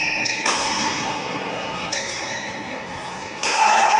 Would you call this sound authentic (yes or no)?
no